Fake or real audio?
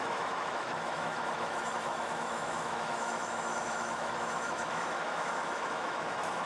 fake